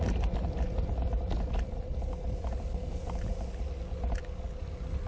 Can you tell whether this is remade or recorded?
recorded